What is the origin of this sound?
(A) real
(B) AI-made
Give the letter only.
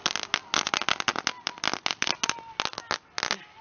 A